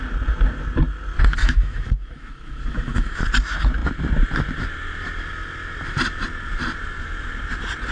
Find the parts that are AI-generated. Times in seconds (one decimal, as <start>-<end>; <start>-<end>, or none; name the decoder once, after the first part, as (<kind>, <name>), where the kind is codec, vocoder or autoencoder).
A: 1.4-3.2 (autoencoder, DAC-VAE)